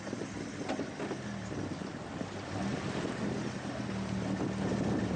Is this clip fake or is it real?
real